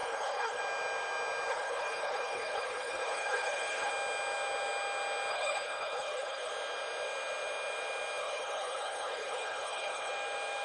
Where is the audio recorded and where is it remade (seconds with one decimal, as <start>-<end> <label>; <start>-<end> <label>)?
0.0-0.6 remade; 0.6-1.5 recorded; 1.5-3.9 remade; 3.9-5.3 recorded; 5.3-6.5 remade; 6.5-8.2 recorded; 8.2-10.1 remade; 10.1-10.6 recorded